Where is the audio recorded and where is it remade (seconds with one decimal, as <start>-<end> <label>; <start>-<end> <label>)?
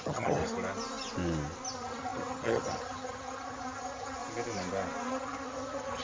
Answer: 0.0-0.4 remade; 0.4-1.7 recorded; 1.7-4.2 remade; 4.2-5.1 recorded; 5.1-6.0 remade